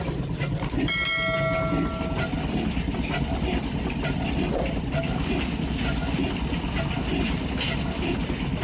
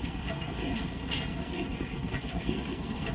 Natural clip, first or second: first